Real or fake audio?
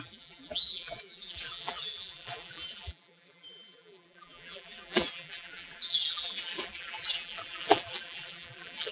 fake